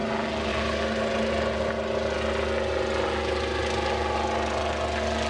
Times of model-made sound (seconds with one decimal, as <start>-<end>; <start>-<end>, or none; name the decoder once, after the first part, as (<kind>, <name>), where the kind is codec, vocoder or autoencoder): none